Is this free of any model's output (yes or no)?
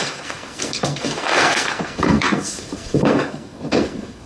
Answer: no